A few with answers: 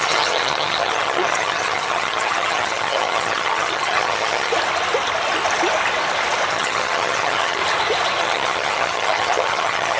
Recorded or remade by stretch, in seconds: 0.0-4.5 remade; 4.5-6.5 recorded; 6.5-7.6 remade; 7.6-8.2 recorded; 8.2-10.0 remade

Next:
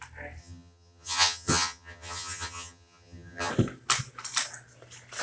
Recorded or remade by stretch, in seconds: 0.0-0.4 recorded; 0.4-3.5 remade; 3.5-5.2 recorded

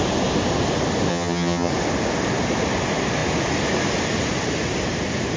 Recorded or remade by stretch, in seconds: 0.0-1.1 recorded; 1.1-1.7 remade; 1.7-5.4 recorded

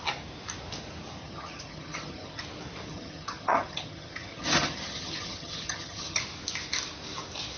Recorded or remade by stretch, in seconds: 0.0-1.2 recorded; 1.2-2.4 remade; 2.4-2.9 recorded; 2.9-6.2 remade; 6.2-7.6 recorded

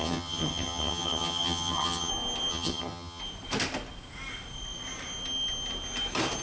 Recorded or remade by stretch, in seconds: 0.0-2.1 remade; 2.1-2.5 recorded; 2.5-3.2 remade; 3.2-6.4 recorded